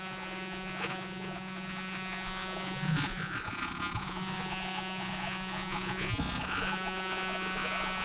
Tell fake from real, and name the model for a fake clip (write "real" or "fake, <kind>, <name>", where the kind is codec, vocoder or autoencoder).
fake, vocoder, Vocos